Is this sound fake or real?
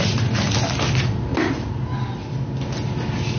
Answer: real